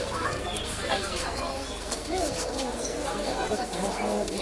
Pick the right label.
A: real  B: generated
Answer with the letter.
B